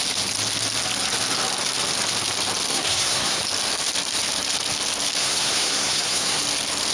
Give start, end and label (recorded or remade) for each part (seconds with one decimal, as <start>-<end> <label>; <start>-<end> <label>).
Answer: 0.0-2.7 recorded; 2.7-3.4 remade; 3.4-5.2 recorded; 5.2-6.4 remade; 6.4-6.9 recorded